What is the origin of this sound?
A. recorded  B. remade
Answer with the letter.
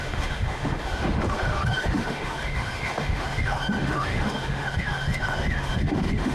B